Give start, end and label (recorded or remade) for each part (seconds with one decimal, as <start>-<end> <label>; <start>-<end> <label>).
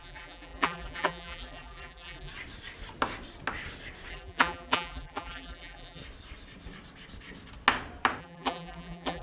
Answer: 0.0-2.3 remade; 2.3-4.1 recorded; 4.1-6.0 remade; 6.0-8.2 recorded; 8.2-9.2 remade